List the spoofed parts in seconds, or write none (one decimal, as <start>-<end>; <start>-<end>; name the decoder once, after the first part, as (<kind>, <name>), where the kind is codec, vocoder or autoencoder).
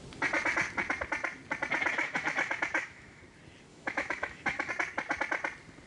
1.9-3.2 (autoencoder, DAC-VAE); 3.7-4.7